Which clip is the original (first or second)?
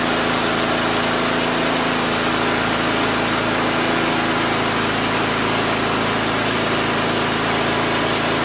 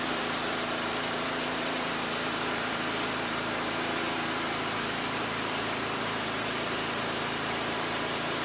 first